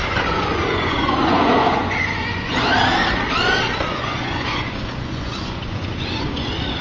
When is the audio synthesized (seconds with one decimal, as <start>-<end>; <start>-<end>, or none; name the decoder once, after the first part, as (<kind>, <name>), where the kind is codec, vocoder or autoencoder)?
0.0-2.7 (vocoder, Vocos); 3.9-6.8